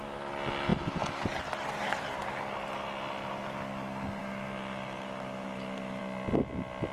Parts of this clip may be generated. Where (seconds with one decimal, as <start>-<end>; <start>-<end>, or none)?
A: 4.2-6.0